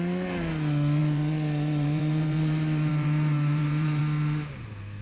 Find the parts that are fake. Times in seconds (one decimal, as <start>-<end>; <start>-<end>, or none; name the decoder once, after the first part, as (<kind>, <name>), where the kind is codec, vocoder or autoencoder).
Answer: 1.0-4.0 (vocoder, BigVGAN v2)